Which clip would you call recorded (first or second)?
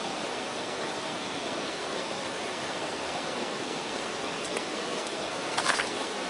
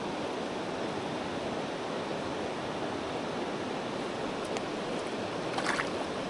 second